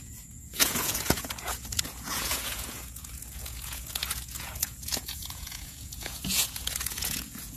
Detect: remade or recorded remade